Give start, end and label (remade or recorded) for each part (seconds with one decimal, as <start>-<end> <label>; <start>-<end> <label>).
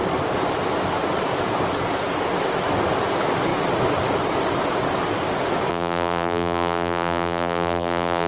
0.0-5.7 recorded; 5.7-8.3 remade